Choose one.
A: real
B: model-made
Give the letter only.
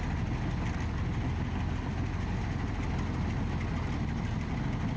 A